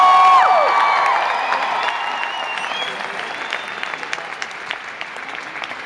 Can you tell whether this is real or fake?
real